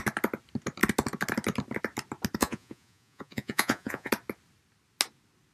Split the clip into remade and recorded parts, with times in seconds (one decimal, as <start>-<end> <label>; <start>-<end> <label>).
0.0-2.4 recorded; 2.4-4.1 remade; 4.1-5.5 recorded